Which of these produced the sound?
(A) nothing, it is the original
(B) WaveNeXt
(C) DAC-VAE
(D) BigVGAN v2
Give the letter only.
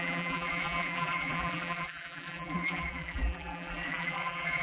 D